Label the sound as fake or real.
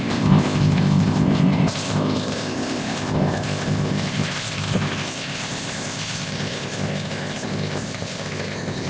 fake